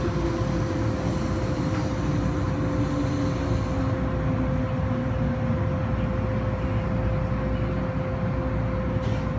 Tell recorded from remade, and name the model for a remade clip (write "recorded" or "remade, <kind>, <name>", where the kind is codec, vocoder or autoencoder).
recorded